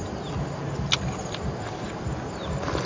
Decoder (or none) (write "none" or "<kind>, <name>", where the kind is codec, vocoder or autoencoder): none